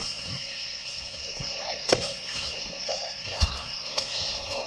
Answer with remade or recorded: remade